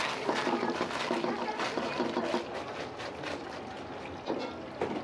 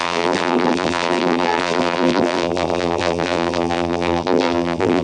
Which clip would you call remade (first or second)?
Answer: second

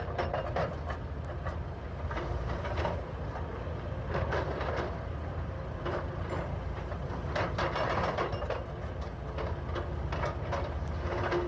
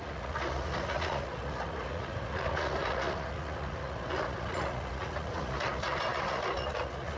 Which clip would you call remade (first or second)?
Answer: second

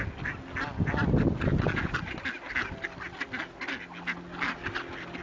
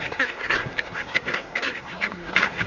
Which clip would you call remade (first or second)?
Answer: second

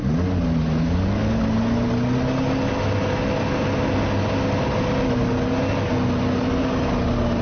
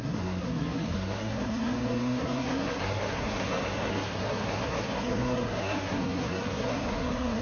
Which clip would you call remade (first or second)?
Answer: second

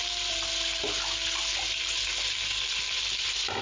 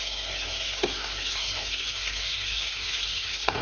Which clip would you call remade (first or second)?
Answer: second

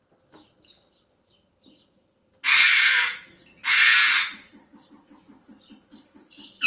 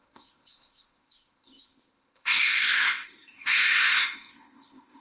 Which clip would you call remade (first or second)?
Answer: second